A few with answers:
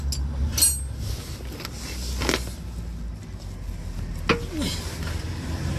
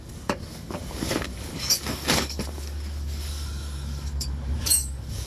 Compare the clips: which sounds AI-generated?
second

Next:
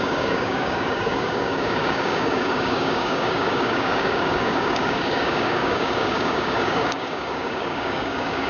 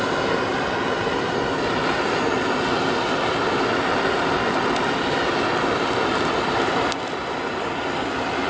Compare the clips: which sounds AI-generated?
first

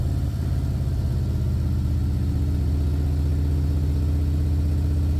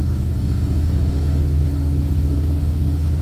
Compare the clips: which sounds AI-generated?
second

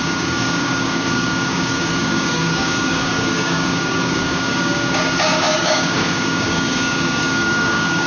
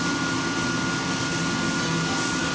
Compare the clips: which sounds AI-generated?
first